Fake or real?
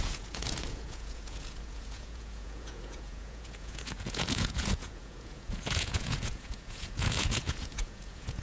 fake